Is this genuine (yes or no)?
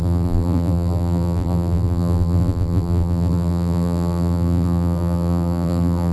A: no